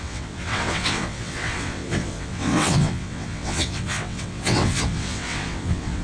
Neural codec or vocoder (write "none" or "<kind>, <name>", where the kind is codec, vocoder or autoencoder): vocoder, WaveNeXt